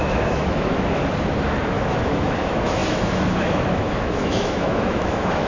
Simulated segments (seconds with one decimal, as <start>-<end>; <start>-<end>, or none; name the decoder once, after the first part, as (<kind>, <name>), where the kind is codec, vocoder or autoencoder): 0.0-1.0 (autoencoder, DAC-VAE); 1.7-5.5